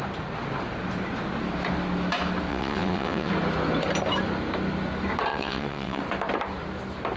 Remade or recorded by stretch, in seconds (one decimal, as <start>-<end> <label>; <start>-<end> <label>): 0.0-2.5 recorded; 2.5-3.3 remade; 3.3-5.3 recorded; 5.3-6.0 remade; 6.0-7.2 recorded